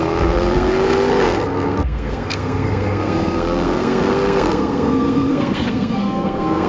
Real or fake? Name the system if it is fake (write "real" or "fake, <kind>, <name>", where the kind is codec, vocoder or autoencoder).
fake, codec, SNAC